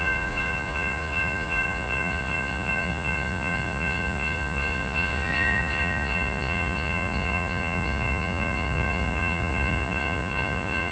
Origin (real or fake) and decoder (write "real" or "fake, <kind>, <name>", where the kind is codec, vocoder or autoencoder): fake, vocoder, Vocos